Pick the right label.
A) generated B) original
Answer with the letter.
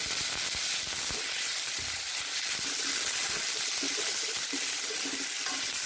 B